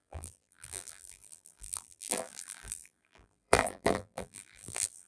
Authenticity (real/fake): fake